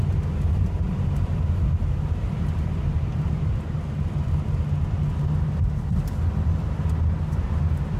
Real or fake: real